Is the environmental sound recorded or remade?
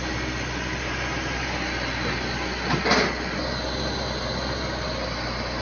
recorded